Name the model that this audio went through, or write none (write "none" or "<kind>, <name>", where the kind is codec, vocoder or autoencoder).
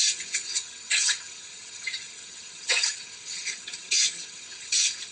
vocoder, HiFi-GAN